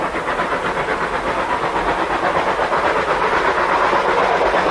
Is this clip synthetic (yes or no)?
no